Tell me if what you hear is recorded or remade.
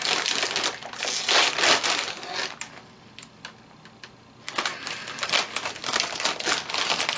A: recorded